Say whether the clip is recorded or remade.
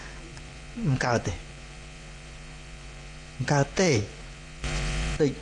remade